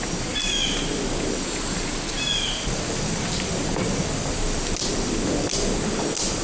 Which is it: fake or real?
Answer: real